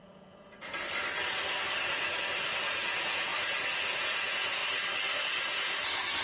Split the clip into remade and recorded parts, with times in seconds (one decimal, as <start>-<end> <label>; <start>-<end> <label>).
0.0-0.7 remade; 0.7-2.6 recorded; 2.6-3.3 remade; 3.3-4.0 recorded; 4.0-4.6 remade; 4.6-6.2 recorded